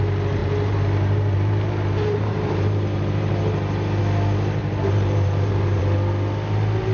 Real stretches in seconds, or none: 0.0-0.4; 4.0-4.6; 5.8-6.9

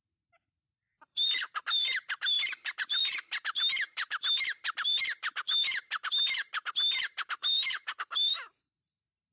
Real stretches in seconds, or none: none

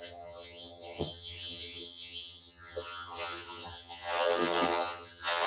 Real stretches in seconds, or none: none

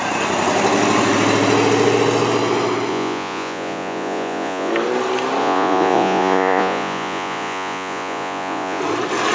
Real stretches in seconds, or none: 0.0-2.9; 4.7-5.4; 8.8-9.3

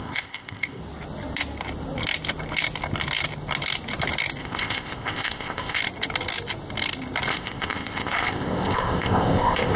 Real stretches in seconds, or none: 0.8-4.4; 5.8-7.3

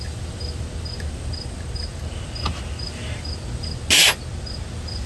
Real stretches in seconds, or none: 0.0-5.1

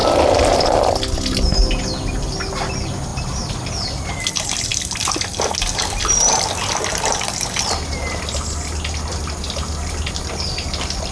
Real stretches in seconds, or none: 0.0-3.1; 4.3-11.1

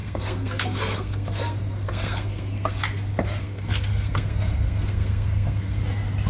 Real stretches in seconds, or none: 2.8-3.4; 5.8-6.3